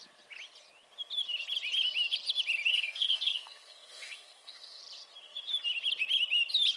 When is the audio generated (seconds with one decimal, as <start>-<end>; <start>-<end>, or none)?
2.7-4.8